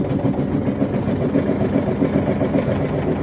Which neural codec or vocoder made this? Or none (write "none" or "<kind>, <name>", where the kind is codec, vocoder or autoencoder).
none